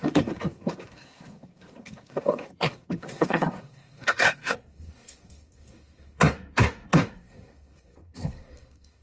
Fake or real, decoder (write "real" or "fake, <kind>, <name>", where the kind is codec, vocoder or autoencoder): fake, codec, SNAC